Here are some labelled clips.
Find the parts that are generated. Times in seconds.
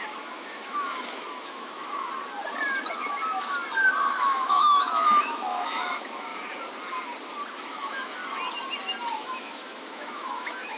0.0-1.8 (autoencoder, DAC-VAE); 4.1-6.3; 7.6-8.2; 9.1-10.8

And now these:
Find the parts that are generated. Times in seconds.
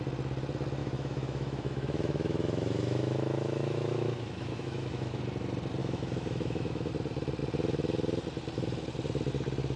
0.8-5.2 (autoencoder, DAC-VAE); 5.8-6.9